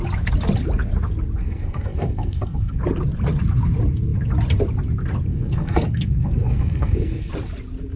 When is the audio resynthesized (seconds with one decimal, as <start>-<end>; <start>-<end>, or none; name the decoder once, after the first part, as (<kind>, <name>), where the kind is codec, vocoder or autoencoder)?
1.4-2.8 (codec, SNAC); 5.3-7.3